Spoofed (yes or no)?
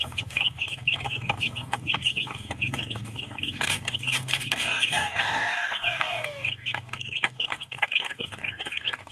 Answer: yes